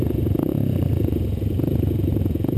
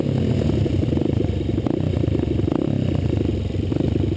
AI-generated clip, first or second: first